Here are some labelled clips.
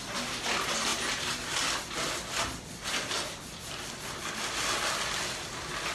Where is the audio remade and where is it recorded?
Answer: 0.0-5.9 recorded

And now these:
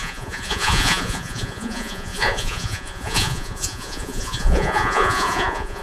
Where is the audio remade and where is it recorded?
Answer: 0.0-5.8 remade

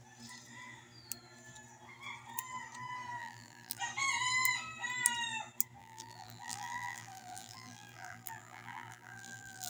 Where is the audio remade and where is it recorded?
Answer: 0.0-3.2 recorded; 3.2-3.8 remade; 3.8-5.8 recorded; 5.8-9.7 remade

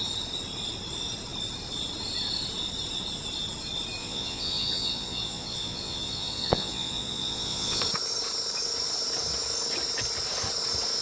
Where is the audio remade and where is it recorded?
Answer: 0.0-4.0 recorded; 4.0-7.8 remade; 7.8-11.0 recorded